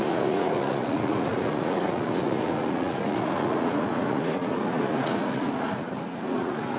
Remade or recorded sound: remade